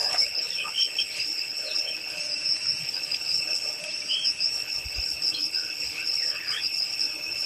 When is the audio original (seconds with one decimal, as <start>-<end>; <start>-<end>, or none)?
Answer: 2.2-2.8; 3.8-4.5